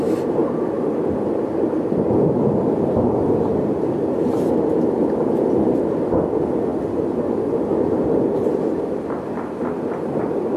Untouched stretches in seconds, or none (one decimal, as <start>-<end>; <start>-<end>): 0.0-0.4; 3.1-5.0; 5.9-6.7